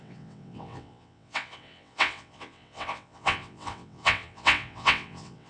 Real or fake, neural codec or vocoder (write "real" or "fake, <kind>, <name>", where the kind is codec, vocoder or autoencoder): fake, vocoder, WaveNeXt